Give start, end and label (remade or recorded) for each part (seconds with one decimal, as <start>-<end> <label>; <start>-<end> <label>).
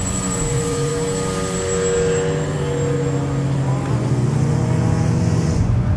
0.0-0.9 remade; 0.9-3.9 recorded; 3.9-6.0 remade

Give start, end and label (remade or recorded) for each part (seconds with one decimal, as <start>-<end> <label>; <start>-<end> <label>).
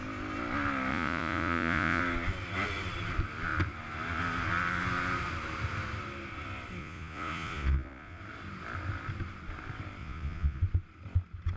0.0-0.9 recorded; 0.9-2.0 remade; 2.0-6.8 recorded; 6.8-8.2 remade; 8.2-10.0 recorded; 10.0-10.6 remade; 10.6-11.6 recorded